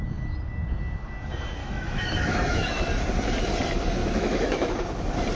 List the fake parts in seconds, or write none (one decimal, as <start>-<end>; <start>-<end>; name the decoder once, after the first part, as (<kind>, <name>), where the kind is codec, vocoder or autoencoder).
1.6-2.8 (autoencoder, DAC-VAE); 4.0-4.7